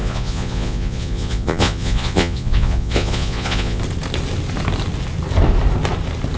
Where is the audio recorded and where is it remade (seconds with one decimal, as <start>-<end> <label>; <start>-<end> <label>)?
0.0-3.8 remade; 3.8-6.4 recorded